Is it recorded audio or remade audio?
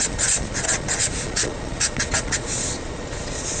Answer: remade